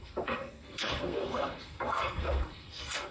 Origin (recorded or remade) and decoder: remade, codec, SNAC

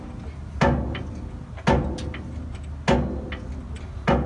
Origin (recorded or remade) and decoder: recorded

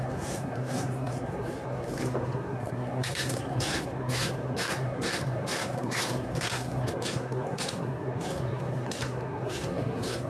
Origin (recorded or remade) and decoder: remade, codec, SNAC